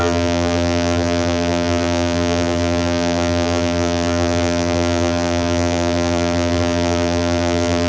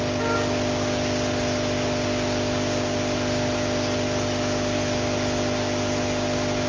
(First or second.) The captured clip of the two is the second